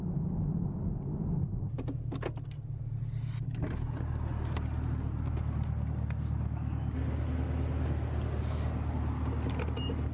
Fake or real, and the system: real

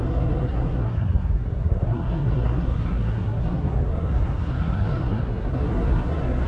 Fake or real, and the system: fake, codec, SNAC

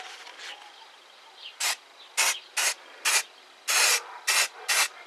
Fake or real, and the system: real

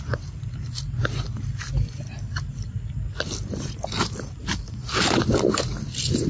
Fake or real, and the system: real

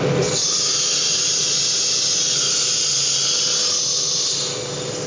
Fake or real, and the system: real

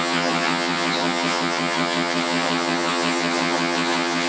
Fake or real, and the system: fake, vocoder, HiFi-GAN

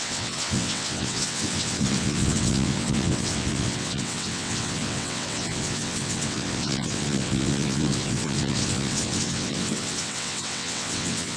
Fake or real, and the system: fake, vocoder, WaveNeXt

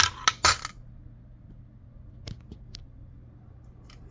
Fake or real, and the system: real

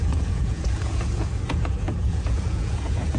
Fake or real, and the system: fake, vocoder, Vocos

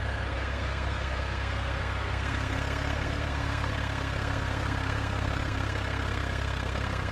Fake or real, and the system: fake, codec, SNAC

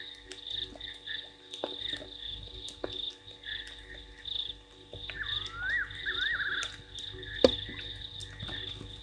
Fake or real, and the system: real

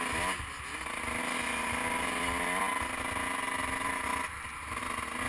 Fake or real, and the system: real